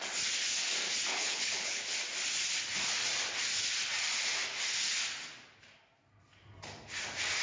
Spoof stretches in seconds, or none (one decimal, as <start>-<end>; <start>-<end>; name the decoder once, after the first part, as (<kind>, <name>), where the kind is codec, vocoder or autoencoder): 1.1-1.8 (codec, HILCodec)